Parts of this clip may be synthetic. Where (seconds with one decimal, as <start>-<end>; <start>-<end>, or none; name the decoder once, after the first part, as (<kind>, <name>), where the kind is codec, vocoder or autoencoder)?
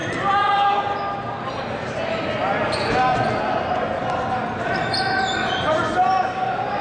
none